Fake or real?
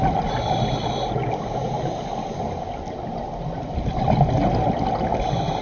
real